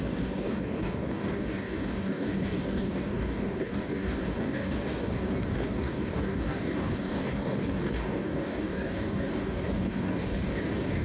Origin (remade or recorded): remade